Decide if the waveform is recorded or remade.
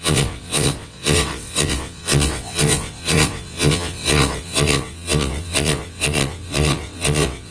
remade